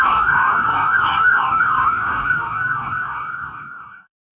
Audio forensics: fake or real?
fake